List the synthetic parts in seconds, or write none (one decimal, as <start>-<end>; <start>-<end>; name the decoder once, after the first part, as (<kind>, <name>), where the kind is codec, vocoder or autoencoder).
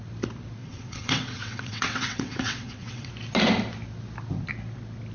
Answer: 0.6-3.1 (vocoder, WaveNeXt)